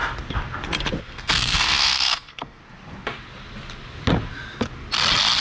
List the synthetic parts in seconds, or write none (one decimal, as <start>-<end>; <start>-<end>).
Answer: 1.0-2.6

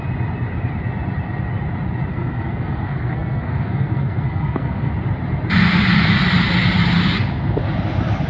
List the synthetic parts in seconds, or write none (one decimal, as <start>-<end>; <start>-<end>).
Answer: 2.1-4.9

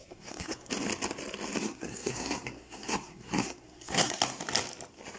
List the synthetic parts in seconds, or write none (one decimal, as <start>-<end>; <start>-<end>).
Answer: 0.0-0.7; 1.6-4.2

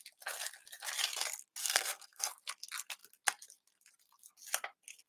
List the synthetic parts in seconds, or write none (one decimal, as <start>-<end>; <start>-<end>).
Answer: 1.6-2.3

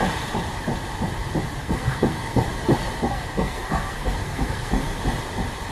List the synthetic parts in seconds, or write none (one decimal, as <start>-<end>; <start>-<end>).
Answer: 1.6-2.4; 3.1-5.0

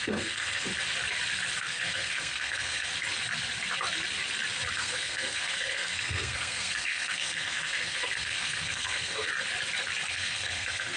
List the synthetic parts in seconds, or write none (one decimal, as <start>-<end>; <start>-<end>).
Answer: 0.0-0.7; 1.6-2.9; 4.7-9.3; 10.1-11.0

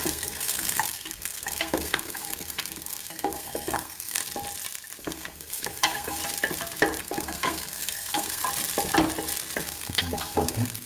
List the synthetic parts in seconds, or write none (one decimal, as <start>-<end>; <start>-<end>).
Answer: 0.0-4.2; 5.0-6.2; 7.0-8.4; 9.6-10.9